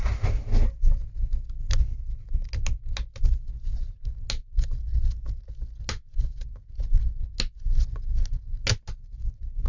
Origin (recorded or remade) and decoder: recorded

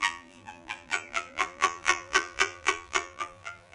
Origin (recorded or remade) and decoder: remade, vocoder, BigVGAN v2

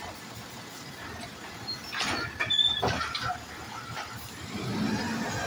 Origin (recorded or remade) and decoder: recorded